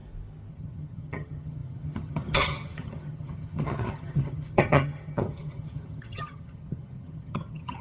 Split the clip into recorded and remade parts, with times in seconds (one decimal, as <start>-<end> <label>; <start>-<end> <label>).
0.0-0.5 recorded; 0.5-7.8 remade